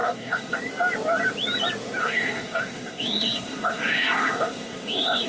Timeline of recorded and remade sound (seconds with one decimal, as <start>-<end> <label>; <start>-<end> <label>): 0.0-0.6 remade; 0.6-2.0 recorded; 2.0-5.3 remade